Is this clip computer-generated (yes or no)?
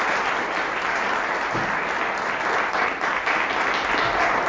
no